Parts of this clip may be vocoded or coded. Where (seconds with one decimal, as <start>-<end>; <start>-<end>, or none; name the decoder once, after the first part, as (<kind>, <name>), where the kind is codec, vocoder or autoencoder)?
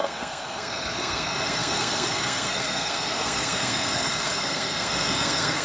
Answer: 0.0-5.6 (codec, SNAC)